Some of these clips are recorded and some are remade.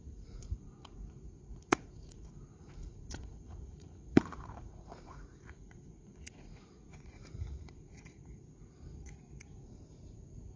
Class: remade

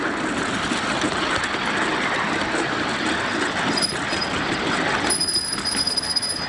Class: recorded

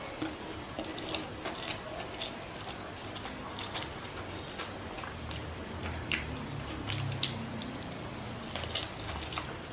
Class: recorded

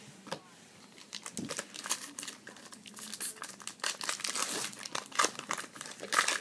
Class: recorded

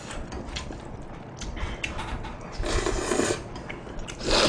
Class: recorded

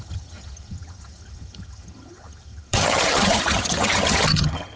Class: remade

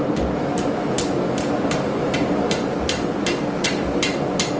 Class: recorded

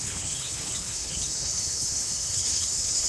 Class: remade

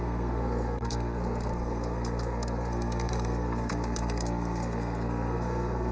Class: remade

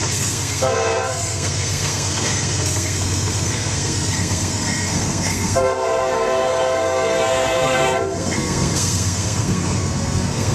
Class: remade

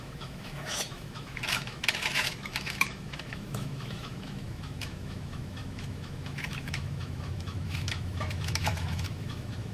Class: remade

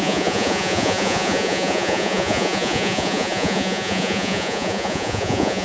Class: remade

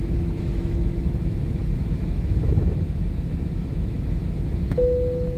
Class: remade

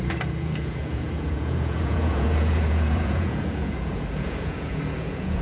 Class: remade